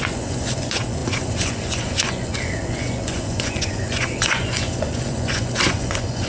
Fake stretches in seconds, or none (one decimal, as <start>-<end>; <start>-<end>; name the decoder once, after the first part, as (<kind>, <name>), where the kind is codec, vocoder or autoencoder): 0.0-6.3 (vocoder, Vocos)